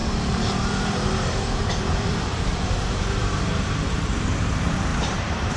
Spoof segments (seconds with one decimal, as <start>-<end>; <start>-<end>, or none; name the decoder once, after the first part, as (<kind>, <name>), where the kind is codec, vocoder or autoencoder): 0.0-5.6 (vocoder, BigVGAN v2)